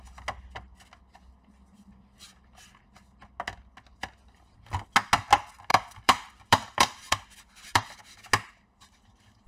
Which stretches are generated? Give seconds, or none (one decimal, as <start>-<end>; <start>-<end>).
5.7-8.0